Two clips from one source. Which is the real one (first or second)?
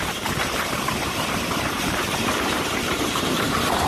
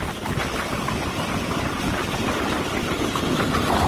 second